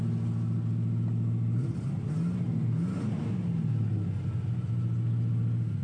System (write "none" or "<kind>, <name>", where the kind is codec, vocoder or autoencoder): none